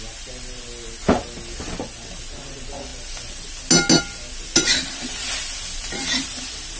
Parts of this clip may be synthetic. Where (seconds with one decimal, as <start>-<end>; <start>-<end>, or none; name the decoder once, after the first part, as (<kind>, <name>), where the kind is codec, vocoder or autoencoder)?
none